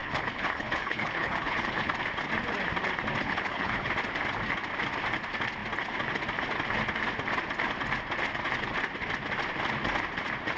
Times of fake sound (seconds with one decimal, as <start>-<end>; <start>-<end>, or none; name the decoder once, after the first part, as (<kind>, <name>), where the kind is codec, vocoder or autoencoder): 0.0-1.9 (codec, HILCodec); 3.2-3.9